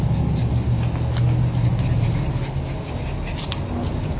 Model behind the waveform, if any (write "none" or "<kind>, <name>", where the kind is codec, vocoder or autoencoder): none